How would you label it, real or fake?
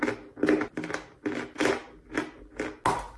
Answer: real